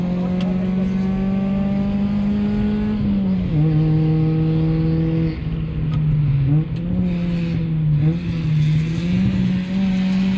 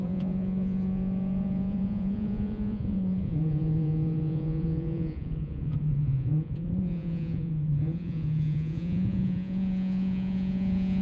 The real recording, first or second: first